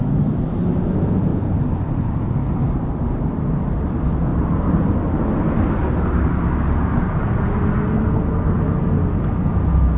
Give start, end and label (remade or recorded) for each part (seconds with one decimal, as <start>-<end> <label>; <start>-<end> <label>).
0.0-1.3 recorded; 1.3-3.9 remade; 3.9-4.3 recorded; 4.3-4.8 remade; 4.8-10.0 recorded